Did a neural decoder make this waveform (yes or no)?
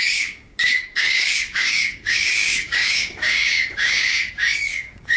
yes